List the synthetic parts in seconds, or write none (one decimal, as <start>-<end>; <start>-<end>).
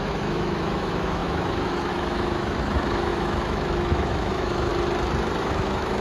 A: 0.0-4.7; 5.4-6.0